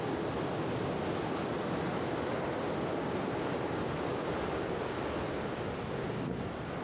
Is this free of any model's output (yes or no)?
yes